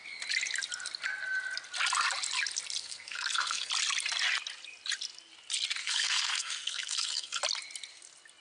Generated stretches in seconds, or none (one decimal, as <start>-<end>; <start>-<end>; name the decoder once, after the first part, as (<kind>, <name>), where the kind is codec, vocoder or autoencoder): 2.8-3.7 (codec, SNAC); 5.8-7.4